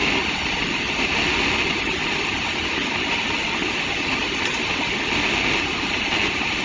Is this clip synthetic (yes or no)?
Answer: no